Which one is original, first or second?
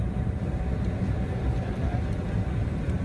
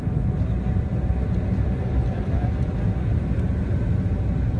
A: second